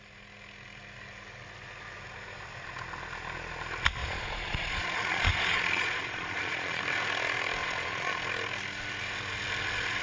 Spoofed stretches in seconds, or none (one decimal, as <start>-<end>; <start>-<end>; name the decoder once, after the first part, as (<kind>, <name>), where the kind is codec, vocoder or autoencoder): 4.0-6.8 (vocoder, Vocos); 7.6-8.2